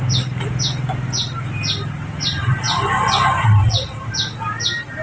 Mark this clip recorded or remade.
recorded